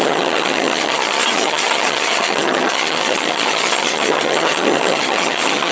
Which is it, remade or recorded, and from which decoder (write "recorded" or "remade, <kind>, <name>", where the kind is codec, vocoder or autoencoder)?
remade, vocoder, HiFi-GAN